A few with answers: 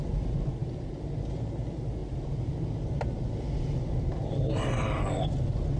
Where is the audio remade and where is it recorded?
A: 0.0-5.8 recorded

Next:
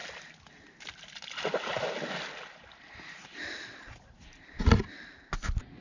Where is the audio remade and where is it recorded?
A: 0.0-5.8 recorded

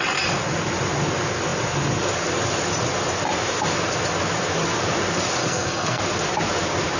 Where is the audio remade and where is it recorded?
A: 0.0-5.4 recorded; 5.4-6.0 remade; 6.0-7.0 recorded

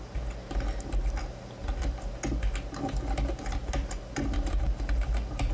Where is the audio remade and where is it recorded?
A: 0.0-5.5 recorded